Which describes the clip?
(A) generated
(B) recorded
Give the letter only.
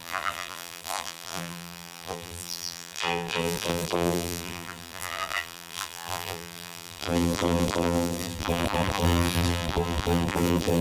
A